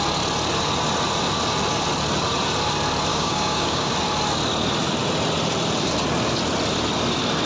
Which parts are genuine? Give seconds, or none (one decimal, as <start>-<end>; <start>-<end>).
0.0-3.1; 3.9-7.5